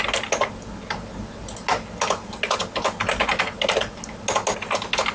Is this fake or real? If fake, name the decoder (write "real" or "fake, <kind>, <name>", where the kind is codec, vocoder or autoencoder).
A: real